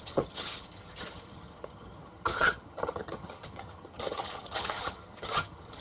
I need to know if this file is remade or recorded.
remade